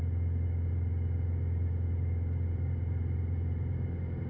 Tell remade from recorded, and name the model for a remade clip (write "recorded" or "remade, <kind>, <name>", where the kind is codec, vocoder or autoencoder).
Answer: recorded